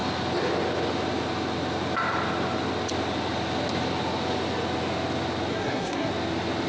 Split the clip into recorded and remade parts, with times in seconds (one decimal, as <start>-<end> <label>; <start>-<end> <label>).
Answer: 0.0-5.5 recorded; 5.5-6.1 remade; 6.1-6.7 recorded